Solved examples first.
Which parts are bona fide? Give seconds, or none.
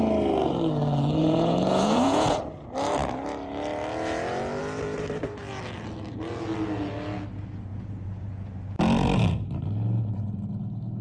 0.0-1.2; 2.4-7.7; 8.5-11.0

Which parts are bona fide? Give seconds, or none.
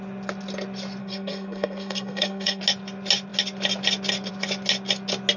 0.0-1.0; 2.6-5.4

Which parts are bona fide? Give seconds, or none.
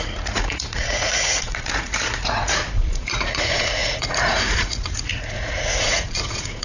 none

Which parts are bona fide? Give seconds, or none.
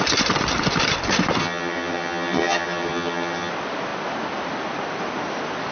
0.0-1.4; 3.5-5.7